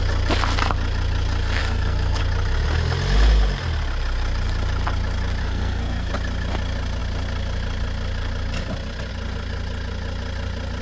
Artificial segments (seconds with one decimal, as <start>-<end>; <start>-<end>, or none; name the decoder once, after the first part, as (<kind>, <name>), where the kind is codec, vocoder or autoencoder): 1.6-2.2 (codec, SNAC); 5.4-6.1